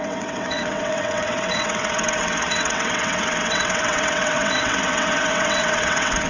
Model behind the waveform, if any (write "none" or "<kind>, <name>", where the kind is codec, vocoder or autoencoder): vocoder, WaveNeXt